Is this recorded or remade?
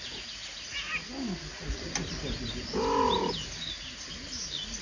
recorded